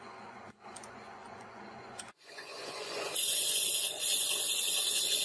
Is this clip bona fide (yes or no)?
no